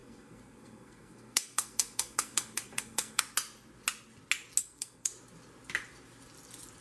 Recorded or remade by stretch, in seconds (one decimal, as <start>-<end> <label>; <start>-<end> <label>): 0.0-3.2 remade; 3.2-4.6 recorded; 4.6-5.1 remade; 5.1-6.8 recorded